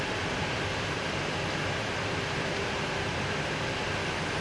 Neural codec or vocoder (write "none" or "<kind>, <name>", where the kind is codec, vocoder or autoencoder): none